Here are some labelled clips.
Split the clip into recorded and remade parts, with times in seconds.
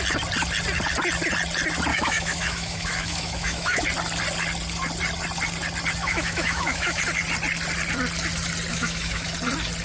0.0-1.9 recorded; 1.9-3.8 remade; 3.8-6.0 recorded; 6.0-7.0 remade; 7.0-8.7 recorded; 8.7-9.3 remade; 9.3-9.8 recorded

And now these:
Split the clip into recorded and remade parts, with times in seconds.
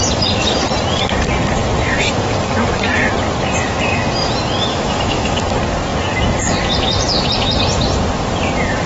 0.0-4.7 recorded; 4.7-5.4 remade; 5.4-8.9 recorded